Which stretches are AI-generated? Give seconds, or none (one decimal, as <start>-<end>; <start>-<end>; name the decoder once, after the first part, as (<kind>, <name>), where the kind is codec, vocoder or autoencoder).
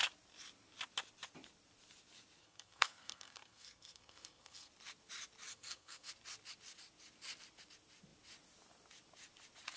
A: 2.4-4.7 (codec, SNAC); 5.5-6.1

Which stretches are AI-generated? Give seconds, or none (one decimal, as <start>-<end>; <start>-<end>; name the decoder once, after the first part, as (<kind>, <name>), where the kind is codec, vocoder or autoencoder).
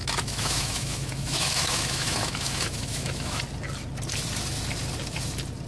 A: 0.0-3.4 (autoencoder, DAC-VAE)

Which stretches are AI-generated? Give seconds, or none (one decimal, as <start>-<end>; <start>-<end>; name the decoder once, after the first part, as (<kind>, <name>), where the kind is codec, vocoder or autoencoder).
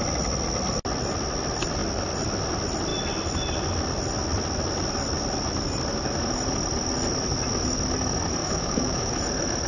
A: 8.4-9.1 (autoencoder, DAC-VAE)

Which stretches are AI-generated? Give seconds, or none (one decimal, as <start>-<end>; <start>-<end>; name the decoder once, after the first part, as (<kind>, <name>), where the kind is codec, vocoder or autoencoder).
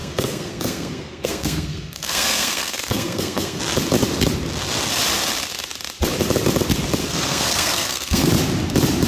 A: 0.0-3.6 (codec, SNAC); 7.0-8.3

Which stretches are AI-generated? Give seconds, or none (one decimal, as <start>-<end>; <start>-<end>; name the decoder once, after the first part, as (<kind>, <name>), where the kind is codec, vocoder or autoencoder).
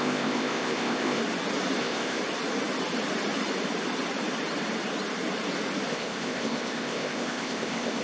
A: 0.0-1.2 (codec, ZipCodec); 1.8-2.2; 5.9-8.0